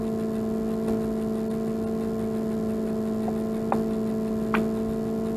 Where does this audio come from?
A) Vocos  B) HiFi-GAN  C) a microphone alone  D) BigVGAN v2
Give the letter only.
C